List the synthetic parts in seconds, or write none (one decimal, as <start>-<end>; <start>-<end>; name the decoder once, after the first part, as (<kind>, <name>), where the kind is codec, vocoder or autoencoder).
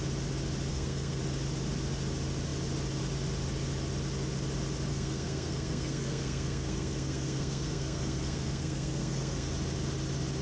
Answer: 0.7-1.2 (codec, SNAC); 4.9-9.5